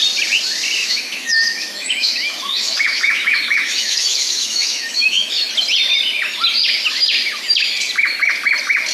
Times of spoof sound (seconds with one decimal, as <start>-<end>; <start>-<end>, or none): 0.8-5.5